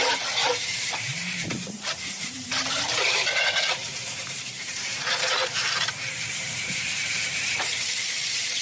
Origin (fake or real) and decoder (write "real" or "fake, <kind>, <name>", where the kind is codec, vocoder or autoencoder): fake, vocoder, BigVGAN v2